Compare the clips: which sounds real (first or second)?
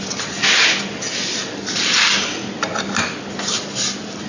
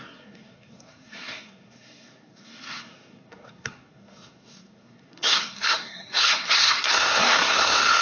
first